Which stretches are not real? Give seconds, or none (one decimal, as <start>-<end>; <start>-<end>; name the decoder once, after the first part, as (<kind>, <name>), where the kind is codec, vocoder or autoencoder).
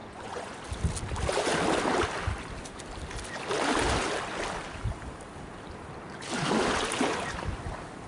0.0-0.6 (vocoder, Vocos)